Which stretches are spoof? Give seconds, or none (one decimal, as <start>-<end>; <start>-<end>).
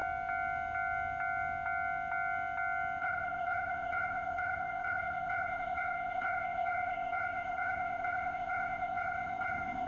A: 3.0-9.9